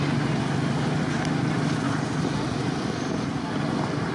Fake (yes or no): no